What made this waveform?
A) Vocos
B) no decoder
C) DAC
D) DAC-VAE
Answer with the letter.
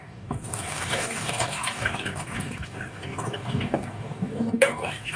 C